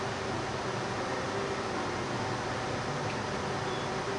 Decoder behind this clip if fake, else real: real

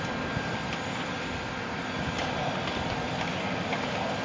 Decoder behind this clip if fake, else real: real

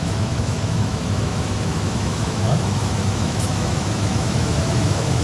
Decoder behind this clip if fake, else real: fake, autoencoder, DAC-VAE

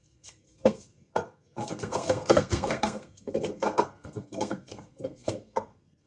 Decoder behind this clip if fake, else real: fake, codec, SNAC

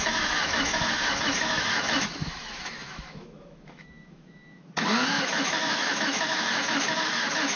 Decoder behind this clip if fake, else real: fake, autoencoder, DAC-VAE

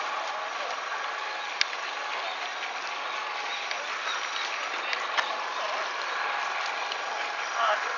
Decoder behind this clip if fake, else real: real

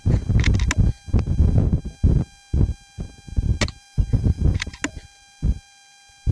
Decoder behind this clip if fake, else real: real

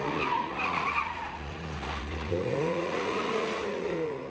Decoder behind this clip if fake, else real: fake, vocoder, Vocos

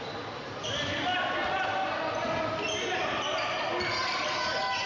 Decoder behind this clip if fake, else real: real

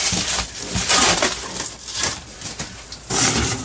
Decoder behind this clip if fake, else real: fake, vocoder, BigVGAN v2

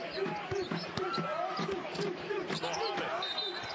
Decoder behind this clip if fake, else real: real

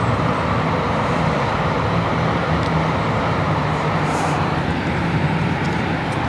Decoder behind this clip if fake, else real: fake, vocoder, BigVGAN v2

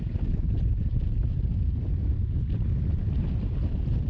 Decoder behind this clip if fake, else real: real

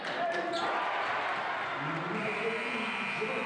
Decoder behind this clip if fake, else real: real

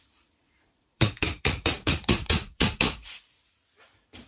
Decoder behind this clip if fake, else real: fake, vocoder, Vocos